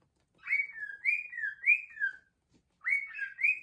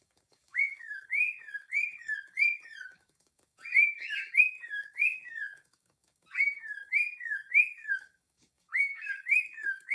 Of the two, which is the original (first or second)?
first